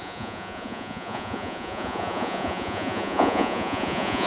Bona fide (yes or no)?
no